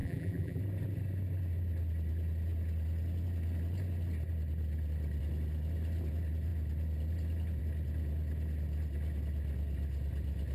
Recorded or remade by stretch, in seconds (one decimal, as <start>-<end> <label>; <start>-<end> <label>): 0.0-0.6 remade; 0.6-10.5 recorded